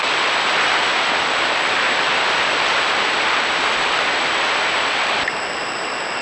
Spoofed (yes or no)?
yes